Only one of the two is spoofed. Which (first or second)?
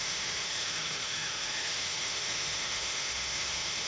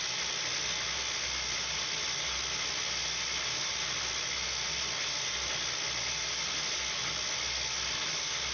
first